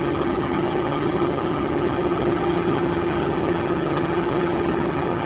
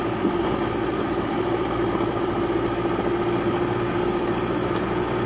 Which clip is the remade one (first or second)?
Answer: first